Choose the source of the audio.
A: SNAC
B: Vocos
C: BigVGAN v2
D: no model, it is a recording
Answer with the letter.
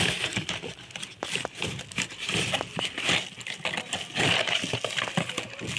D